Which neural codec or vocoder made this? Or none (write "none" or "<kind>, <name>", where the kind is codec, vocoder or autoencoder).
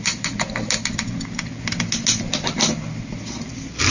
none